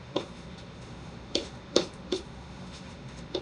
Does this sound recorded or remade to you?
remade